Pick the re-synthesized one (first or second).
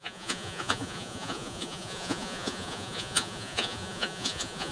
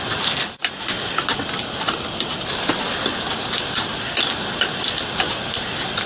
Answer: first